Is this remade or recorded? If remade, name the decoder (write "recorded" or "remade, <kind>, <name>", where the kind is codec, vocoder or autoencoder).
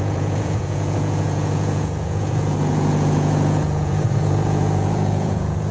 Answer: remade, vocoder, Vocos